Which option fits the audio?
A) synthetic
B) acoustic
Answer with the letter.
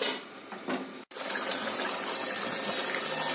B